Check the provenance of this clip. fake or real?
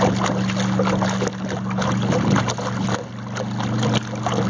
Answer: real